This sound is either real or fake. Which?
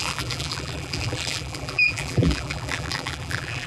fake